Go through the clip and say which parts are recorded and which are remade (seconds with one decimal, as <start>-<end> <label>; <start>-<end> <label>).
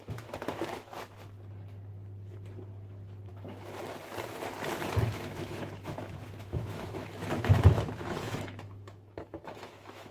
0.0-0.9 remade; 0.9-3.3 recorded; 3.3-3.8 remade; 3.8-4.7 recorded; 4.7-10.1 remade